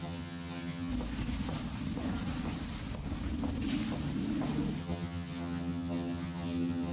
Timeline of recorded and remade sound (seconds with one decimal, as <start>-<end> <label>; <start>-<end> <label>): 0.0-0.9 remade; 0.9-4.8 recorded; 4.8-6.9 remade